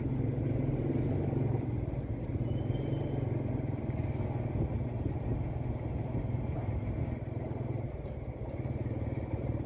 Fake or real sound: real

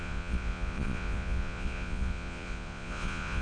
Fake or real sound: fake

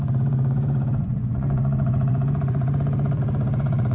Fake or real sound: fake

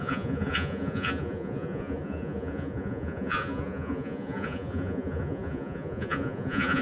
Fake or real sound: fake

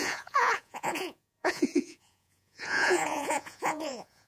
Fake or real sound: fake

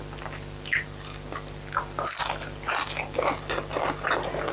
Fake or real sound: real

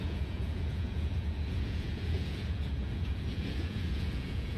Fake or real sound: fake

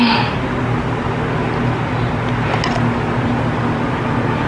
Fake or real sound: real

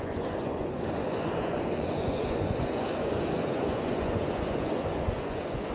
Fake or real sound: fake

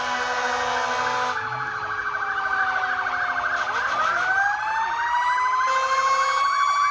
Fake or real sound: real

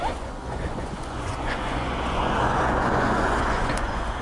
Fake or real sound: fake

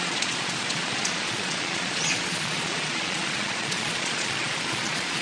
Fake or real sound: fake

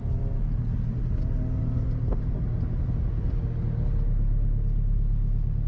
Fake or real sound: real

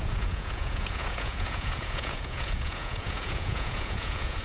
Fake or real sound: fake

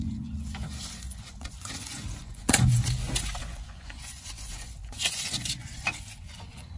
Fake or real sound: fake